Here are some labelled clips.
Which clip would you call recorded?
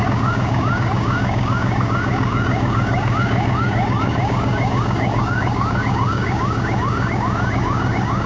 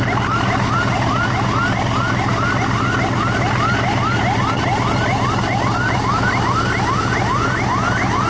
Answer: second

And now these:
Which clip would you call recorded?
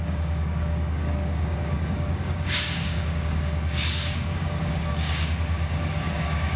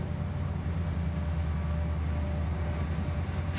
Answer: second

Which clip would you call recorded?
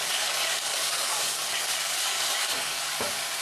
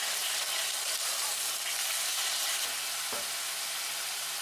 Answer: second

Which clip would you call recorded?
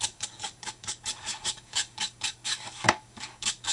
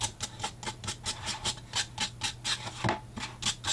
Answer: second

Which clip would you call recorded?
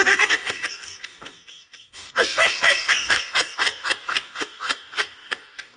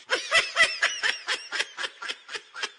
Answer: second